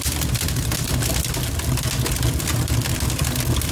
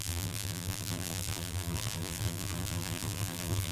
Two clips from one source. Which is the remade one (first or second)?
second